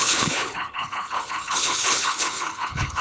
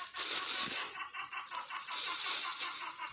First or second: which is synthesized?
first